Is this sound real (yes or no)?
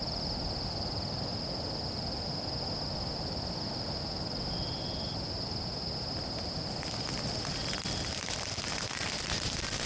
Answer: yes